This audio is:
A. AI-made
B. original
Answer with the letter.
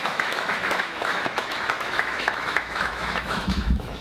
A